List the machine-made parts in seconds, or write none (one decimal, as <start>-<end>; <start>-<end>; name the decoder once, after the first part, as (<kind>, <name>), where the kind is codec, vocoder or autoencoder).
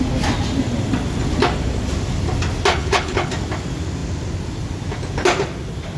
2.7-3.3 (codec, HILCodec)